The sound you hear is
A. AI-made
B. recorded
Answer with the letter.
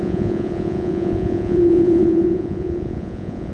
A